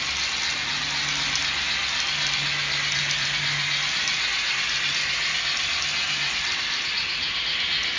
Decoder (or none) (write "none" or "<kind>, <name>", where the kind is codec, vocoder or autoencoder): none